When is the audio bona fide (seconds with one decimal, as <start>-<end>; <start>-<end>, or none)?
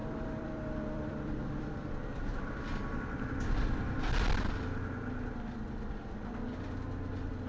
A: 4.5-7.5